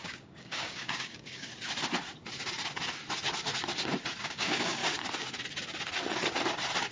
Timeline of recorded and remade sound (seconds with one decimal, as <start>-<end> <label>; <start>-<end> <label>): 0.0-1.5 remade; 1.5-4.2 recorded; 4.2-4.8 remade; 4.8-6.9 recorded